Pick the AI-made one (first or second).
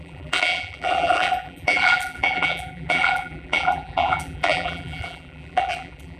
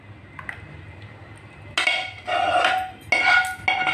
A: first